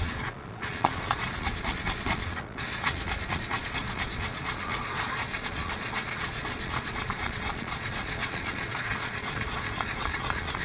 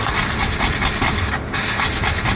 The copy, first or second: first